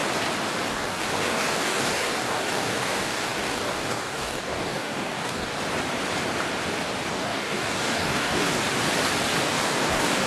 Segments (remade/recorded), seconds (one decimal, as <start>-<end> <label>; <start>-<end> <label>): 0.0-0.7 recorded; 0.7-5.5 remade; 5.5-7.1 recorded; 7.1-8.6 remade; 8.6-9.4 recorded; 9.4-10.3 remade